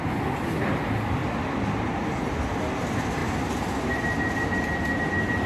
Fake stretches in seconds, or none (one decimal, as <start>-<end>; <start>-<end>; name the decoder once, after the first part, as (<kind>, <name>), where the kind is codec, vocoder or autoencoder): none

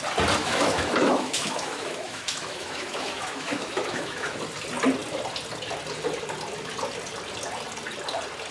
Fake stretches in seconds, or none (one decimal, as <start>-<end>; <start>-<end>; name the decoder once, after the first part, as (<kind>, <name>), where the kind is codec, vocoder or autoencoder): 0.4-4.4 (autoencoder, DAC-VAE)

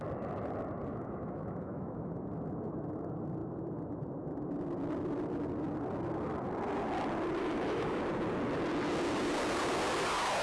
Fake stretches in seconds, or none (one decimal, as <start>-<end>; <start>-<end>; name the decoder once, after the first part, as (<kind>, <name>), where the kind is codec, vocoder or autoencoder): 0.9-2.1 (autoencoder, DAC-VAE); 7.4-8.0

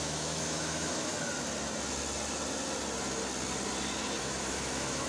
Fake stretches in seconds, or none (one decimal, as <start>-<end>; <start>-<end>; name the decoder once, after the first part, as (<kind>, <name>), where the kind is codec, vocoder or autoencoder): 0.0-1.1 (autoencoder, DAC-VAE); 4.2-5.1

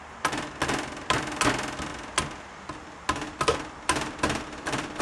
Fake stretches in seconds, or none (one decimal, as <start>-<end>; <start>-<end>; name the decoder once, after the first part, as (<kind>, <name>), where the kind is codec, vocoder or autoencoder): none

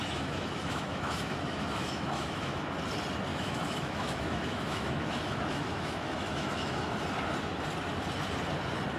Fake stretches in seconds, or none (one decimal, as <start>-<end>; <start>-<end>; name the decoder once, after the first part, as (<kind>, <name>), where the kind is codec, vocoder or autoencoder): 0.0-2.6 (autoencoder, DAC-VAE); 3.3-6.9